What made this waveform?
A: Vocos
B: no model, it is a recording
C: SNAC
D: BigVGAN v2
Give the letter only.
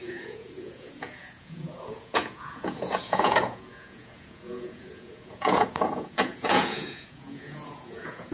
A